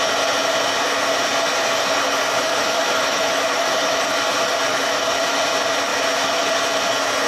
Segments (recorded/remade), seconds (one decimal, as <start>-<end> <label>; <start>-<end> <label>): 0.0-2.4 recorded; 2.4-4.1 remade; 4.1-4.7 recorded; 4.7-5.4 remade; 5.4-7.3 recorded